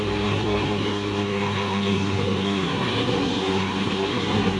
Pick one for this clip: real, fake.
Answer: fake